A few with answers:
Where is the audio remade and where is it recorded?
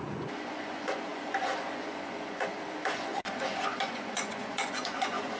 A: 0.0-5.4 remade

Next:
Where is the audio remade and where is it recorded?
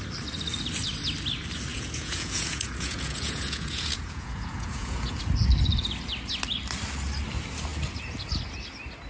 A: 0.0-1.7 recorded; 1.7-5.2 remade; 5.2-9.1 recorded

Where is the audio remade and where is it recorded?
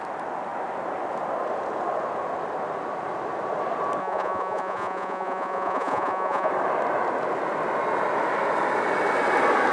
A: 0.0-4.0 recorded; 4.0-6.5 remade; 6.5-9.7 recorded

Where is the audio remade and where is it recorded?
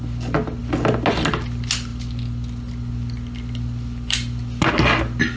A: 0.0-5.4 recorded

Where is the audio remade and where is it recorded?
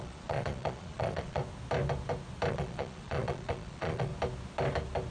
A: 0.0-1.4 remade; 1.4-2.5 recorded; 2.5-4.1 remade; 4.1-5.1 recorded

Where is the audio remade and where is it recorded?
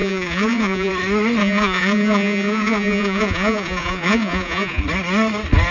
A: 0.0-0.9 remade; 0.9-1.4 recorded; 1.4-4.8 remade; 4.8-5.7 recorded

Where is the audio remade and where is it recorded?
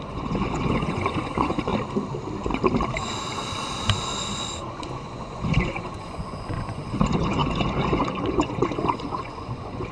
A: 0.0-1.7 remade; 1.7-4.6 recorded; 4.6-9.9 remade